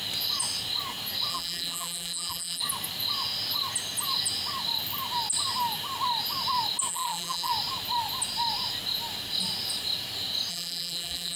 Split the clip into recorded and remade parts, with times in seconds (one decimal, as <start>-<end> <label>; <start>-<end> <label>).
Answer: 0.0-1.3 recorded; 1.3-2.6 remade; 2.6-6.9 recorded; 6.9-7.5 remade; 7.5-10.5 recorded; 10.5-11.4 remade